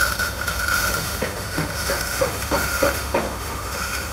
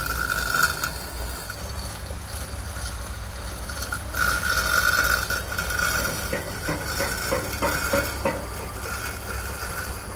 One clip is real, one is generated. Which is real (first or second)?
second